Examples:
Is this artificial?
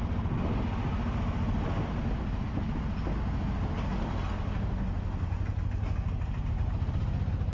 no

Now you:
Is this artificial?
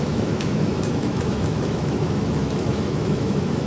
yes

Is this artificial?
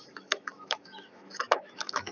yes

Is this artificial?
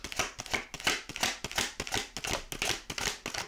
no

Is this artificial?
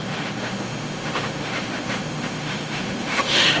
yes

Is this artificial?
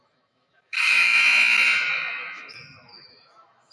yes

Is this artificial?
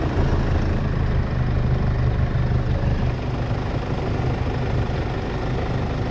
no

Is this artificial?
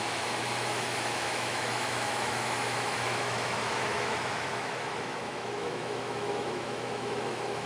yes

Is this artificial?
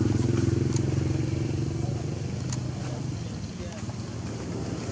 no